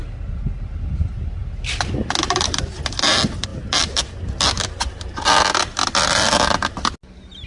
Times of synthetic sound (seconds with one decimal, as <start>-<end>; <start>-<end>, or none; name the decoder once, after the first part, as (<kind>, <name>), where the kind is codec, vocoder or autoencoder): none